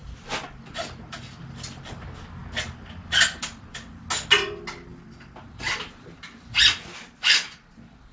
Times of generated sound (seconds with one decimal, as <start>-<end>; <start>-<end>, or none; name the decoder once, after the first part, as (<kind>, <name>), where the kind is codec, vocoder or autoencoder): 0.0-1.9 (vocoder, BigVGAN v2); 2.4-4.0; 4.9-5.9